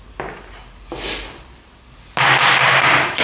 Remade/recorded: recorded